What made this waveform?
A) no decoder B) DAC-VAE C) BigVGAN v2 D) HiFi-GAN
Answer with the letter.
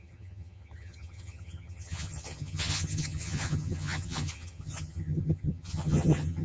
D